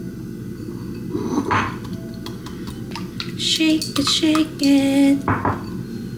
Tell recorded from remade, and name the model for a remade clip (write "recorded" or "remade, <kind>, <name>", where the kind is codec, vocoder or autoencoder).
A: recorded